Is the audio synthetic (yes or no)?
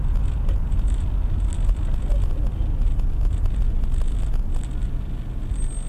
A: no